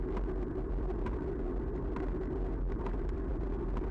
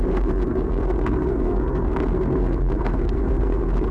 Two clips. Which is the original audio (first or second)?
first